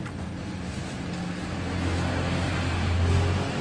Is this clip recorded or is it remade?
recorded